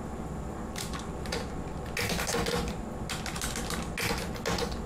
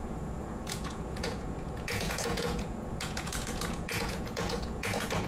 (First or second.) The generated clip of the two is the second